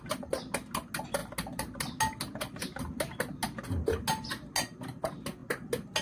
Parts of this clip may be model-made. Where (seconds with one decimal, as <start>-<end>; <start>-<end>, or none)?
none